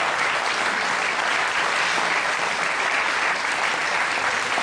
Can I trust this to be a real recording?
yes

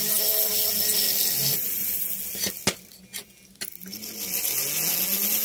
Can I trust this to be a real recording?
yes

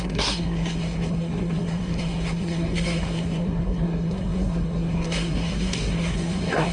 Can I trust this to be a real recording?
no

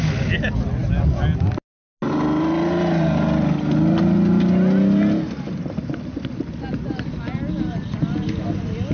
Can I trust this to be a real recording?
yes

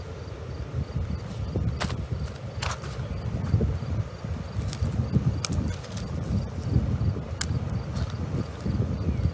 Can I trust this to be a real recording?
yes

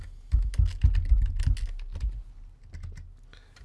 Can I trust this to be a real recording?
yes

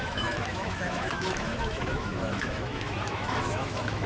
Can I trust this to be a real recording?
no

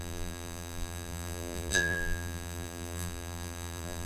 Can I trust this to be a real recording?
no